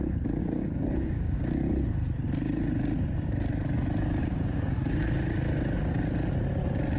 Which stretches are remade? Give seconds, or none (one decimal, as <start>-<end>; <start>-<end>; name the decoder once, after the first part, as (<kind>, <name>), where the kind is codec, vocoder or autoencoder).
0.4-1.7 (codec, DAC); 4.2-4.9